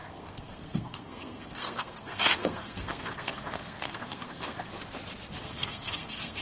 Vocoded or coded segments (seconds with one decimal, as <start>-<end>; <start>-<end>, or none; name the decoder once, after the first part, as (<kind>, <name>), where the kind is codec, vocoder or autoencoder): 0.0-4.7 (codec, SNAC); 5.4-6.4